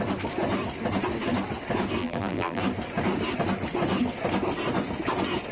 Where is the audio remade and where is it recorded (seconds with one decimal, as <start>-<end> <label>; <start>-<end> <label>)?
0.0-2.0 recorded; 2.0-2.6 remade; 2.6-5.5 recorded